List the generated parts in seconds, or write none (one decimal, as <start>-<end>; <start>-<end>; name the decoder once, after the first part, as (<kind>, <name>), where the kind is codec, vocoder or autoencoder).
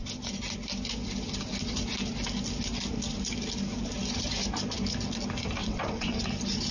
5.6-6.2 (vocoder, WaveNeXt)